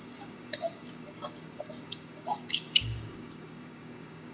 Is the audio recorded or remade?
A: remade